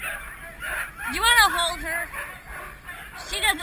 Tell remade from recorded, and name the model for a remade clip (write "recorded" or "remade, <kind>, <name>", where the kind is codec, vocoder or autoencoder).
recorded